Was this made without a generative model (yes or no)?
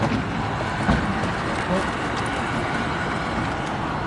yes